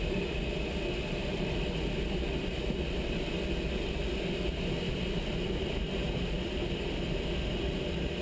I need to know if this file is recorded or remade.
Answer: recorded